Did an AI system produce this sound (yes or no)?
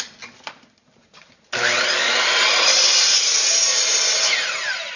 no